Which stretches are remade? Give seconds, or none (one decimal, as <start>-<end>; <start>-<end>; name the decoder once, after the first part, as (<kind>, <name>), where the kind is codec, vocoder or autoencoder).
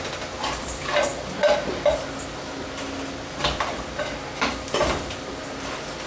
none